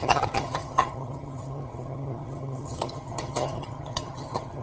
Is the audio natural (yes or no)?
no